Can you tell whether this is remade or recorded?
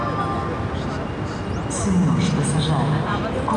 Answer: recorded